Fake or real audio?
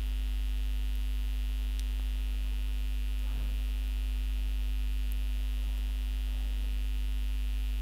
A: real